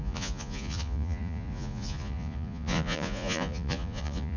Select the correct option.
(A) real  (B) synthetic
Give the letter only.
B